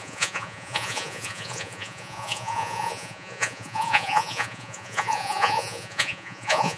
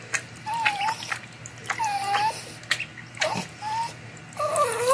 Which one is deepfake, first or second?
first